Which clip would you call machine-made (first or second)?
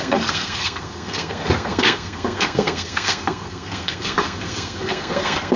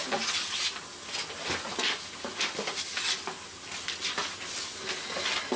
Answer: first